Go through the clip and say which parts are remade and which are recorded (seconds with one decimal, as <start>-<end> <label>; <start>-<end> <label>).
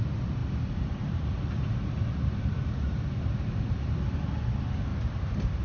0.0-0.4 recorded; 0.4-3.8 remade; 3.8-4.9 recorded; 4.9-5.6 remade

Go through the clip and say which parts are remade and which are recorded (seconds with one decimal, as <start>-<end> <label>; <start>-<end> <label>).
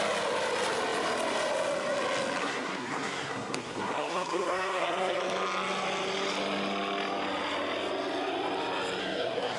0.0-2.4 recorded; 2.4-5.2 remade; 5.2-9.0 recorded; 9.0-9.6 remade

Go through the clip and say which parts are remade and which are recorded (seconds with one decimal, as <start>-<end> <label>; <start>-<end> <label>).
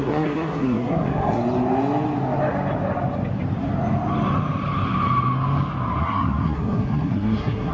0.0-1.4 remade; 1.4-6.0 recorded; 6.0-7.7 remade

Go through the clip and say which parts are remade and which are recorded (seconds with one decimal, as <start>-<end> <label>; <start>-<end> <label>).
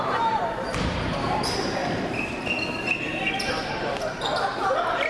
0.0-1.8 remade; 1.8-2.8 recorded; 2.8-5.1 remade